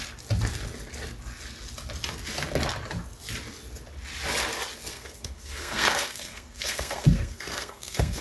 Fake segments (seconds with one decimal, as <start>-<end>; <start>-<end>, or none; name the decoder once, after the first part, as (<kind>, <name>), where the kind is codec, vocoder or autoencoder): 4.9-8.2 (codec, SNAC)